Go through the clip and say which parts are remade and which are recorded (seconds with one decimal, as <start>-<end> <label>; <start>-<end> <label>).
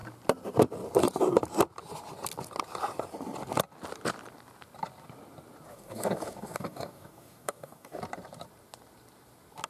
0.0-5.7 recorded; 5.7-8.0 remade; 8.0-9.7 recorded